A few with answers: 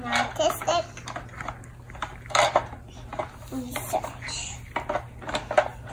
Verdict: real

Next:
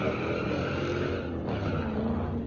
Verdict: real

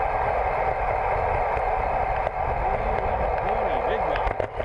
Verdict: real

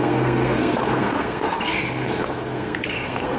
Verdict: fake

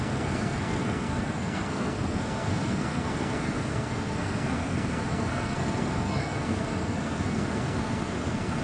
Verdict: fake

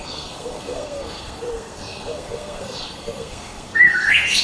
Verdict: fake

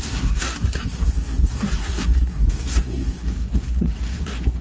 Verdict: fake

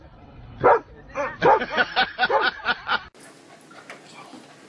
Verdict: real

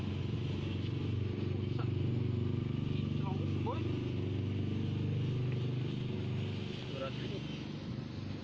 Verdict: real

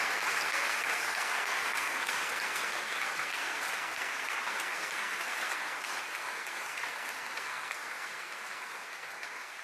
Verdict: fake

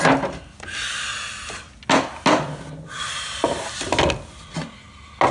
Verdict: real